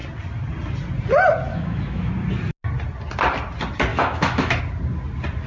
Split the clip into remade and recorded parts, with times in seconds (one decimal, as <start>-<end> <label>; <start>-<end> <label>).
0.0-1.5 recorded; 1.5-2.1 remade; 2.1-3.9 recorded; 3.9-4.6 remade; 4.6-5.5 recorded